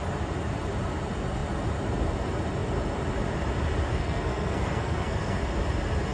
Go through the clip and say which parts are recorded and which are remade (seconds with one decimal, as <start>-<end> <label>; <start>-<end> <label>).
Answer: 0.0-3.9 recorded; 3.9-5.4 remade; 5.4-6.1 recorded